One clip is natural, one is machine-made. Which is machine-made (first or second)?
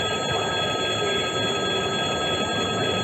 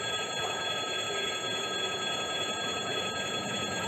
second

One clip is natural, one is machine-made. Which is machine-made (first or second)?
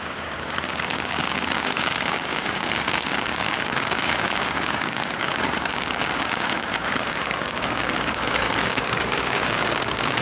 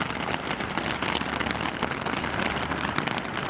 first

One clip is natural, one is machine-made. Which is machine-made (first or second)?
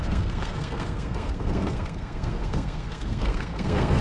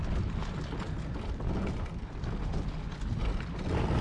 first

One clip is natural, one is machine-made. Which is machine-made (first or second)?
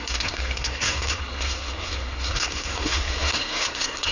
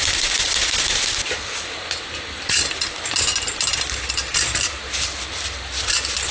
first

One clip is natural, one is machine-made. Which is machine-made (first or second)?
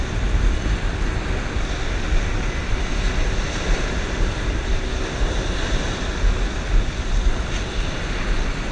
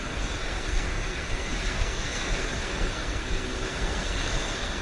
second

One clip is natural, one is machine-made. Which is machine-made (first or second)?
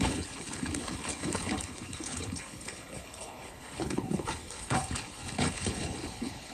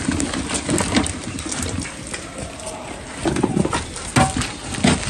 first